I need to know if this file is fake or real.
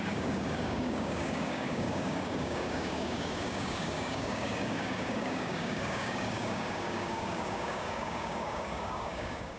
fake